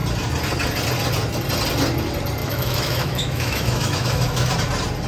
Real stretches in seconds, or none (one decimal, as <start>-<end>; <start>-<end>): 0.0-2.4; 4.5-5.1